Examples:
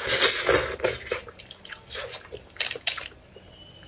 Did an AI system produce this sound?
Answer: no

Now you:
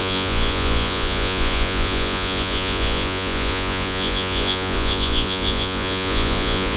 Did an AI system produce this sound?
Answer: yes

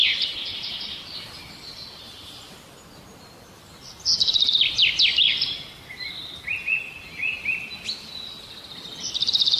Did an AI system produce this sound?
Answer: no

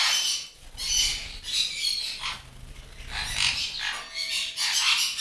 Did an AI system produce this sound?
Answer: no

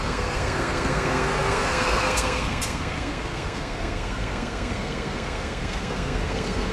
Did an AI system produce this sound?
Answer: yes